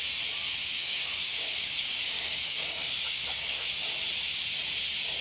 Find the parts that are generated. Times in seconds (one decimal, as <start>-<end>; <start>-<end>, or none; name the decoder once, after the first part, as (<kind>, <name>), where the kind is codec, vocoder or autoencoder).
0.6-3.7 (codec, DAC)